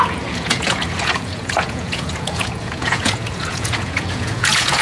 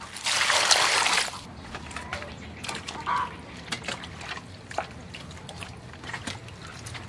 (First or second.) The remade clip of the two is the first